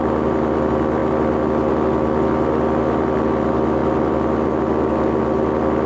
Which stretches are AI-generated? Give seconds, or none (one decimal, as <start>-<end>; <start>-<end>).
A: none